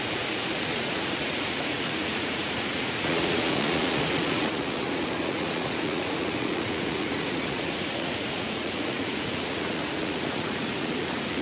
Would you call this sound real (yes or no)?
no